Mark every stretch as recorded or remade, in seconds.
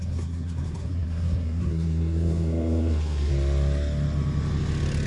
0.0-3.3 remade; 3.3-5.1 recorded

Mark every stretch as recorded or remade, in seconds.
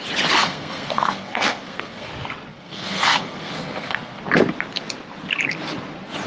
0.0-0.4 recorded; 0.4-2.1 remade; 2.1-2.5 recorded; 2.5-4.2 remade; 4.2-6.3 recorded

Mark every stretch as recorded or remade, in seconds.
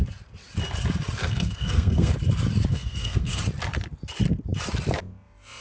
0.0-1.2 recorded; 1.2-2.1 remade; 2.1-2.7 recorded; 2.7-3.4 remade; 3.4-5.6 recorded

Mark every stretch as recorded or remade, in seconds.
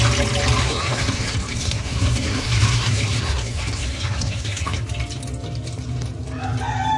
0.0-0.6 recorded; 0.6-4.8 remade; 4.8-7.0 recorded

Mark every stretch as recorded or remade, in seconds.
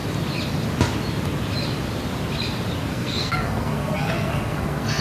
0.0-2.9 recorded; 2.9-5.0 remade